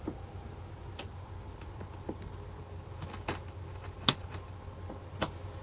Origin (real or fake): real